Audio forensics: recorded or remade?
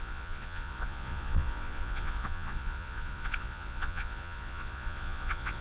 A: remade